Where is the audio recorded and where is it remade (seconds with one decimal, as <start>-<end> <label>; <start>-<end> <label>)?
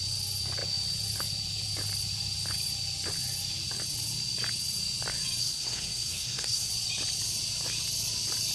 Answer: 0.0-5.4 recorded; 5.4-6.7 remade; 6.7-8.5 recorded